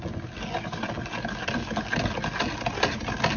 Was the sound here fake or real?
real